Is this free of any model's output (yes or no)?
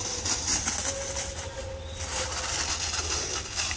yes